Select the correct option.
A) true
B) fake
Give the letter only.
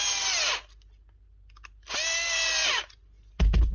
A